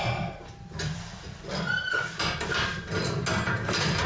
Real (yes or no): yes